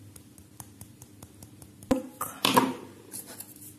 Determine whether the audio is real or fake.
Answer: real